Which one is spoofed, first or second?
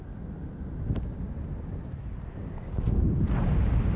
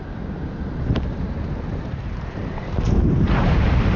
second